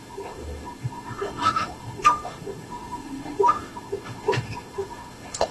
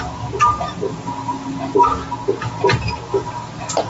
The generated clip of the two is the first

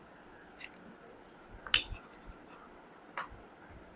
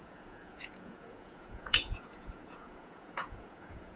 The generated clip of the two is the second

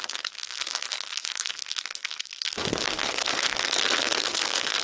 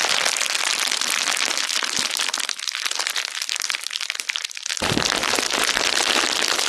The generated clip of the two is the first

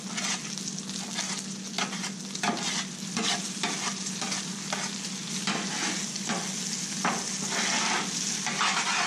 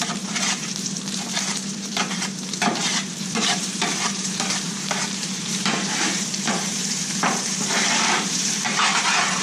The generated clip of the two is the second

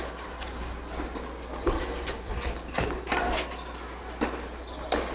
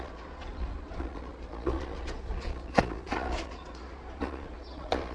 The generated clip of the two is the second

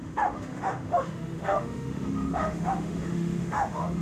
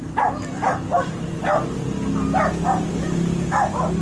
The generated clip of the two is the first